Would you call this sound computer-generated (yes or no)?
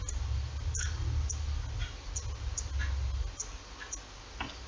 no